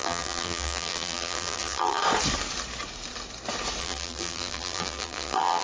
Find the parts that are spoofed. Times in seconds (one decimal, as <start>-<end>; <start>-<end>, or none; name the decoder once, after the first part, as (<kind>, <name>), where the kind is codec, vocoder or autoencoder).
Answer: 0.0-2.0 (vocoder, BigVGAN v2); 3.8-5.6